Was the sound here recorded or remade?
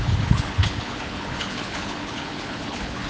remade